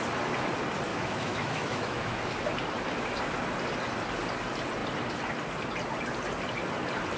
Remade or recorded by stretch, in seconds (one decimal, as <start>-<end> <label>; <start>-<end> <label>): 0.0-0.9 recorded; 0.9-2.2 remade; 2.2-7.2 recorded